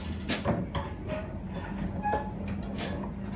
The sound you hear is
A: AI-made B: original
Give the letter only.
B